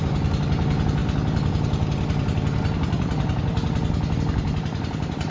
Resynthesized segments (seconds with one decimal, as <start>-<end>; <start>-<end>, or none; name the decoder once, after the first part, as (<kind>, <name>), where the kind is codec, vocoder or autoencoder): none